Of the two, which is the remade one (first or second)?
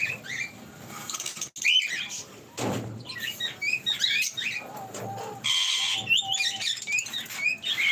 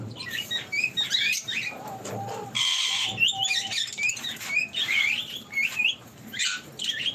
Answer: second